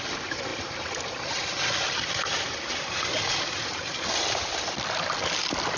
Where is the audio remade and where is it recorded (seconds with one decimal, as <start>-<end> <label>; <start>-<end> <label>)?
0.0-5.8 recorded